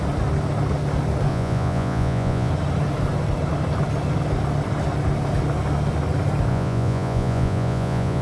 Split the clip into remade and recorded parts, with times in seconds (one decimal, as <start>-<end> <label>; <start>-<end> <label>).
0.0-1.3 recorded; 1.3-2.5 remade; 2.5-6.5 recorded; 6.5-8.2 remade